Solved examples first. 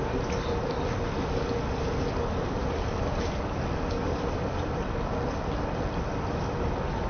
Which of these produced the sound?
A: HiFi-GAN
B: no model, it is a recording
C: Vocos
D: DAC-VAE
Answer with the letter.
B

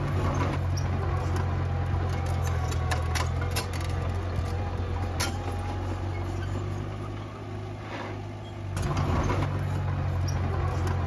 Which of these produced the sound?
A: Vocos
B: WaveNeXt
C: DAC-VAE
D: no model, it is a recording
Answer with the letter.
D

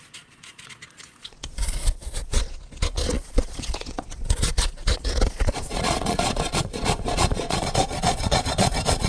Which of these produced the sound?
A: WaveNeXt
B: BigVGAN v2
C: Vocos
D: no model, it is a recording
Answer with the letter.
C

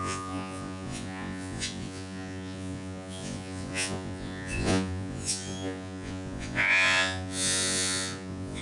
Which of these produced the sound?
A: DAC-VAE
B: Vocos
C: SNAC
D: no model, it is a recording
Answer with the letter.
B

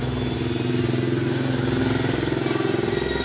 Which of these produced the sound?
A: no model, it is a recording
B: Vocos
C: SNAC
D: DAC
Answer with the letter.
A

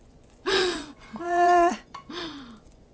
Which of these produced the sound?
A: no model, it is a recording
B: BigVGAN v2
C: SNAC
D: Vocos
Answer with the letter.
D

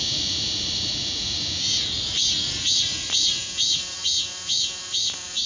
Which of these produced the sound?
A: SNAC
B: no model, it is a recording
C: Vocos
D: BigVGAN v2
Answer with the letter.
C